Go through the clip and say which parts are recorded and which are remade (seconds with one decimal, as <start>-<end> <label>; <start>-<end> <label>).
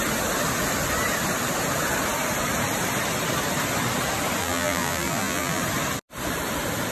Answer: 0.0-4.4 recorded; 4.4-5.6 remade; 5.6-6.9 recorded